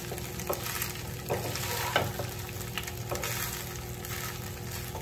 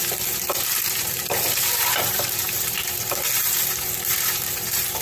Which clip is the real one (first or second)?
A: first